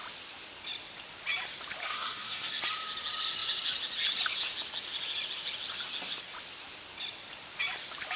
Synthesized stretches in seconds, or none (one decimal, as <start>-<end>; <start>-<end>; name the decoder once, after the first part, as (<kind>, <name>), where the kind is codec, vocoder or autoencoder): 1.8-2.6 (codec, SNAC)